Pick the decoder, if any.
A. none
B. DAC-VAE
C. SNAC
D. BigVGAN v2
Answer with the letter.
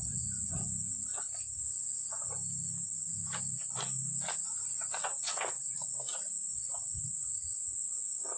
A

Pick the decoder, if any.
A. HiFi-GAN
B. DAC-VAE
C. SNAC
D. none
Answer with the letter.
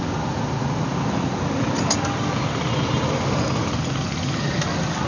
D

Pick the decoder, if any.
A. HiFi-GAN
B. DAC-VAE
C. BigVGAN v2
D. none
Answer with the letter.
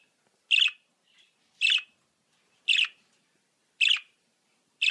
D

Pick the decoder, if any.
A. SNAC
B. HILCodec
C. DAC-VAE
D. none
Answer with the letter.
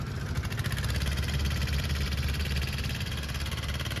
D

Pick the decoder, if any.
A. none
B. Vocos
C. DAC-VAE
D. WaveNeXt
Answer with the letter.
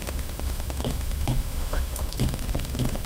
C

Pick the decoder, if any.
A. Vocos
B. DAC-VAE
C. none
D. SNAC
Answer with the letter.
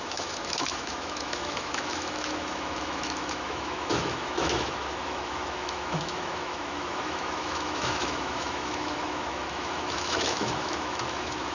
B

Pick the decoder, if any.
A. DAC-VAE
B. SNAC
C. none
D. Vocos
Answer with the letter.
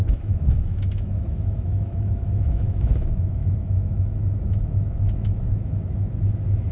A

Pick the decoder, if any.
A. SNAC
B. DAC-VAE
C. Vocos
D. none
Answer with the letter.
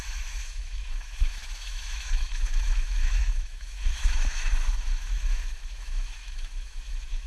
B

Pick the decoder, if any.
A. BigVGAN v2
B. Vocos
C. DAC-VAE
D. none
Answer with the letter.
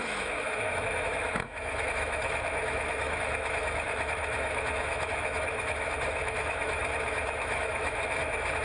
C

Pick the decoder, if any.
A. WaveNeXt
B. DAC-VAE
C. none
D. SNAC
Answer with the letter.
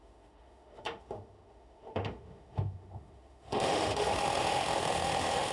B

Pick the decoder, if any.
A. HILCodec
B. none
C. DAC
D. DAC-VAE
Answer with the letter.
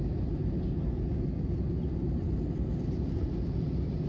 B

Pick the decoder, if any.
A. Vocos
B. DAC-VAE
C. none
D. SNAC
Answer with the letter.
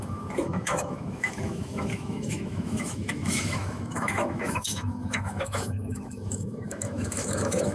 B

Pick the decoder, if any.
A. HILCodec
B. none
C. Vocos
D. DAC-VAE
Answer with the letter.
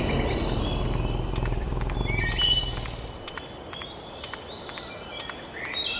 B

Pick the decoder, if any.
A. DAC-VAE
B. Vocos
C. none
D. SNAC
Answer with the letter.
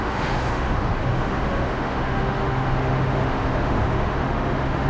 A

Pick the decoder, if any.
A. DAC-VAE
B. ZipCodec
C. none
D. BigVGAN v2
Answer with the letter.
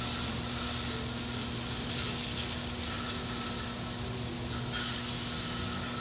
C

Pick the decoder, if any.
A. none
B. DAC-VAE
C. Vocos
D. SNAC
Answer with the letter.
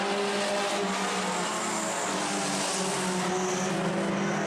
A